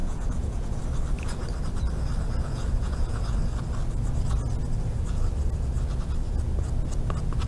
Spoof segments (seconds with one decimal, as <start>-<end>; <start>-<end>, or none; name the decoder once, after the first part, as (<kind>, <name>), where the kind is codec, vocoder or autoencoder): 0.0-0.8 (vocoder, Vocos); 2.4-3.2